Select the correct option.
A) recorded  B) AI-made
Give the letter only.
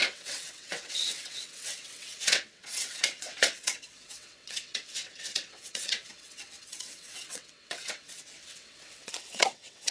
B